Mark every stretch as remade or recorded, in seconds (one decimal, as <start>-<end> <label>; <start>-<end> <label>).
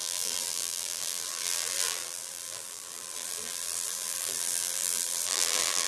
0.0-5.9 remade